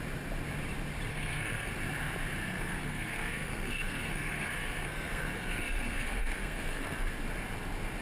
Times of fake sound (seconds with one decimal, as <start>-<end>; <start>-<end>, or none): 1.1-1.7; 2.4-7.1